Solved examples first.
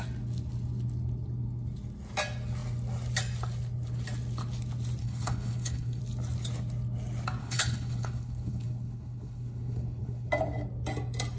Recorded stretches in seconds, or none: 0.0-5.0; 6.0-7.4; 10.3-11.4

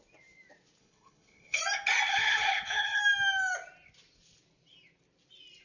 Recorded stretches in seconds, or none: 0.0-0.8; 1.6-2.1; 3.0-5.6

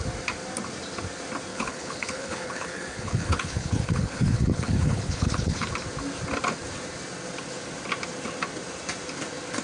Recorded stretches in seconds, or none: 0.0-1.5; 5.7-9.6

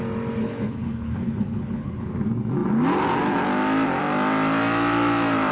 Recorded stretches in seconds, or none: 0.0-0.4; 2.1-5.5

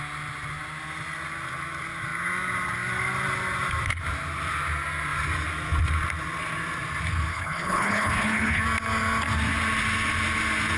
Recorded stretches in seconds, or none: 0.0-7.3; 8.6-10.8

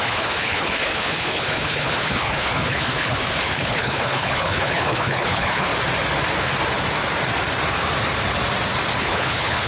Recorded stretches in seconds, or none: 5.7-9.0

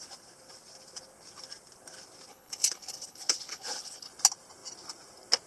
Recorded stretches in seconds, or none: 0.0-2.3; 4.1-5.5